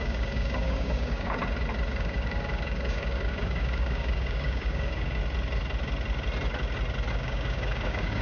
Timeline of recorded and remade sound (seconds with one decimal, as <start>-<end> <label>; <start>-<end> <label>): 0.0-1.4 remade; 1.4-1.9 recorded; 1.9-5.2 remade; 5.2-7.1 recorded; 7.1-8.2 remade